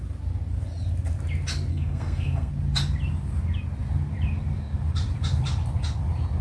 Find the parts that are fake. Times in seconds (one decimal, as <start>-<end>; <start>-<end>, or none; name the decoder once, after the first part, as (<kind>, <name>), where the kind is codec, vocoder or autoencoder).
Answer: 1.7-2.5 (codec, SNAC)